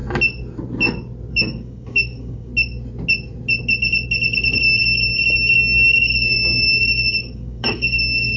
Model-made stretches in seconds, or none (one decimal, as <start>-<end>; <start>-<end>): 1.3-2.5; 6.0-8.4